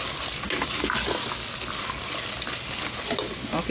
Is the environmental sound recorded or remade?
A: recorded